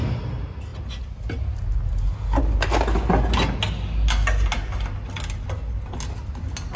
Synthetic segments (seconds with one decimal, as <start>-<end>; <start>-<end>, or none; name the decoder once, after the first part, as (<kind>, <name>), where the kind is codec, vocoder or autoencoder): none